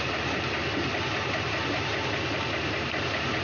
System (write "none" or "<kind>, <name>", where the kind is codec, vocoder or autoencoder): none